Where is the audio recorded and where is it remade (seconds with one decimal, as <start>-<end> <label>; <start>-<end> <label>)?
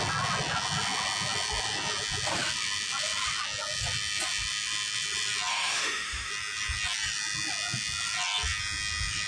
0.0-5.5 recorded; 5.5-6.3 remade; 6.3-9.3 recorded